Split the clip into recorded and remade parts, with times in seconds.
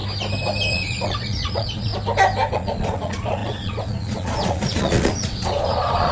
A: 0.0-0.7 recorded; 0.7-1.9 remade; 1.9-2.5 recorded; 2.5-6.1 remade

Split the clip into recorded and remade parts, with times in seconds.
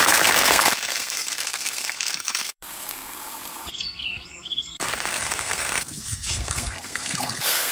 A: 0.0-7.7 remade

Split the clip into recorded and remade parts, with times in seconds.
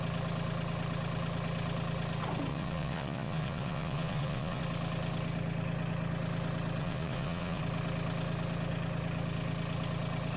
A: 0.0-2.5 recorded; 2.5-4.6 remade; 4.6-6.8 recorded; 6.8-7.6 remade; 7.6-10.4 recorded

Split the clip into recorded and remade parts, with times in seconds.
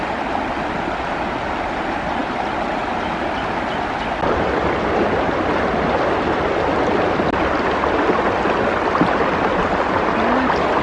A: 0.0-10.8 recorded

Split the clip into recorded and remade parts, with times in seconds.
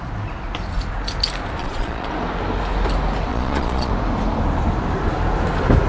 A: 0.0-1.6 recorded; 1.6-2.1 remade; 2.1-3.3 recorded; 3.3-3.9 remade; 3.9-5.9 recorded